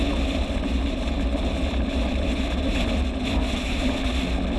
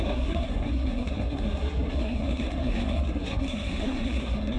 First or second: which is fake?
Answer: second